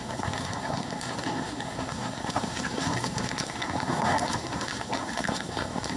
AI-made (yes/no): yes